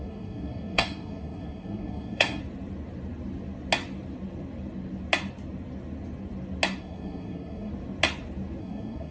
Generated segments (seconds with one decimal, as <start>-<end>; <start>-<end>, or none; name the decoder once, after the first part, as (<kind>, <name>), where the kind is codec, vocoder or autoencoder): 0.0-2.4 (codec, SNAC); 6.8-7.7; 8.6-9.1